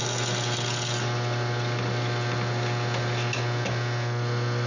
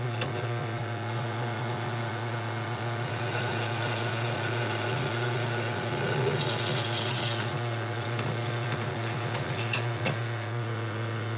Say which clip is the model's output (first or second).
second